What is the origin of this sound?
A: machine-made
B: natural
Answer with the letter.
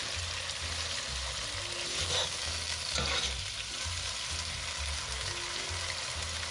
B